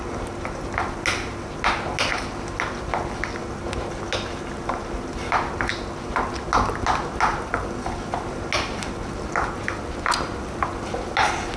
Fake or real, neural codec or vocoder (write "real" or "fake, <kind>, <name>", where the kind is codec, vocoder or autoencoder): real